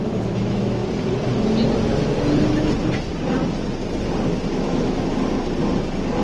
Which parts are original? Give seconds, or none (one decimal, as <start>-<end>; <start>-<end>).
0.8-4.5; 5.1-6.2